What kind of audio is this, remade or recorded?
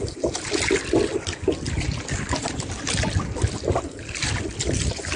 recorded